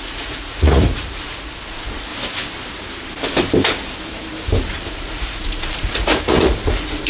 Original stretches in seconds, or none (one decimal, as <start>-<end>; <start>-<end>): 2.1-4.9